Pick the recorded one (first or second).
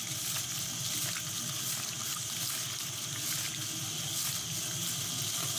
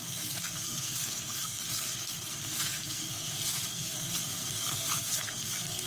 first